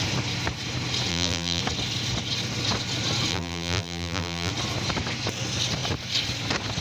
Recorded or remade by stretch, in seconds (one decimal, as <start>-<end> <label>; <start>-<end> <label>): 0.0-1.1 recorded; 1.1-1.6 remade; 1.6-3.3 recorded; 3.3-4.5 remade; 4.5-6.8 recorded